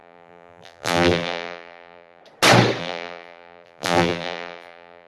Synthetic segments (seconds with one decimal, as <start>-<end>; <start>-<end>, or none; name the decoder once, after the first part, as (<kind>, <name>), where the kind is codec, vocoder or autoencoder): 0.0-2.2 (vocoder, BigVGAN v2); 2.8-5.1